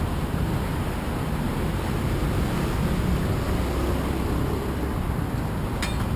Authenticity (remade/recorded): recorded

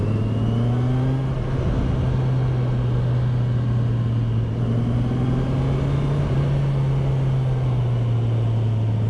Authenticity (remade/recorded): recorded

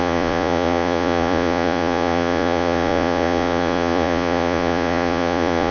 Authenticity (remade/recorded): remade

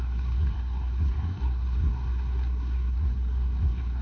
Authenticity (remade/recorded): remade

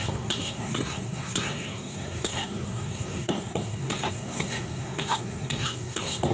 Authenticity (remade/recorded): remade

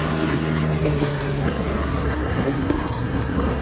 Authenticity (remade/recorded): remade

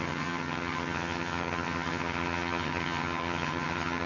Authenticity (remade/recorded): remade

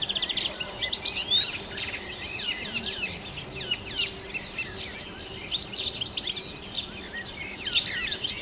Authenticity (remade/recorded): recorded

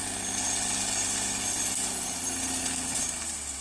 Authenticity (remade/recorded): recorded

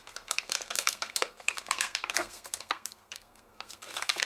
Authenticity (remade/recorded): remade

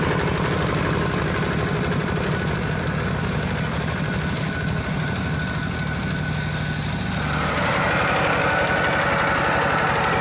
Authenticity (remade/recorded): recorded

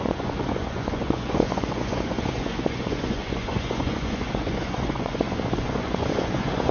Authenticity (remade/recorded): remade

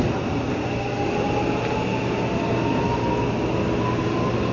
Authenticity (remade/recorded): recorded